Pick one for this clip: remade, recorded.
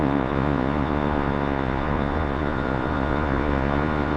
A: remade